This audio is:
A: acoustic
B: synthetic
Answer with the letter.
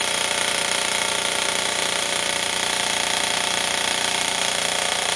B